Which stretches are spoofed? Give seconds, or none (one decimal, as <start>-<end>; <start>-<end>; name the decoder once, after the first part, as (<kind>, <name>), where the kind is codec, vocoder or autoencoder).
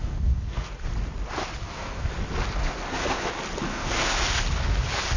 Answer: 0.0-0.7 (codec, SNAC); 1.6-2.1; 2.6-3.3; 3.7-4.4